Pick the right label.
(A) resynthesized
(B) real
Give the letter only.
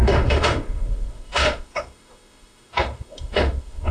A